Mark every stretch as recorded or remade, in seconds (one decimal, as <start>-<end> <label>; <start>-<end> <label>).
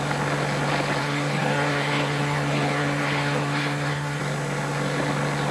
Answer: 0.0-1.0 recorded; 1.0-4.2 remade; 4.2-5.5 recorded